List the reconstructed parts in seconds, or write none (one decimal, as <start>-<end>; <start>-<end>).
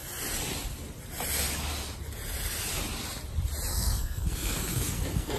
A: 3.7-5.4